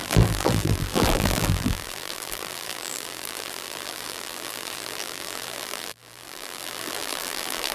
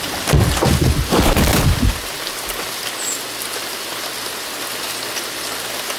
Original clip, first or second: second